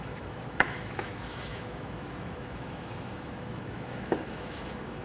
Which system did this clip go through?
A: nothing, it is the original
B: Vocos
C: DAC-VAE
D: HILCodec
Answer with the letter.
C